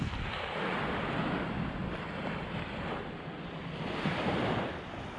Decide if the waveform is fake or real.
fake